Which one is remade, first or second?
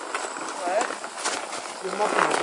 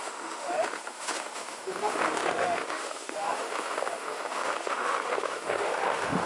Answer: second